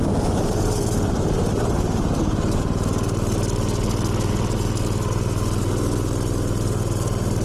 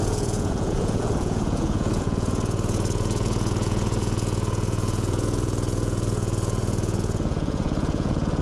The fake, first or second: second